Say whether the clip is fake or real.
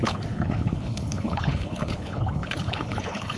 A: fake